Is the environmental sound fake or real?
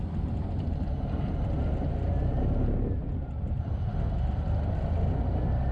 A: real